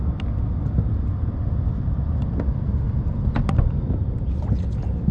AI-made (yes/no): no